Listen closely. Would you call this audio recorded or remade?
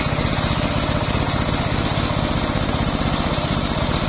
recorded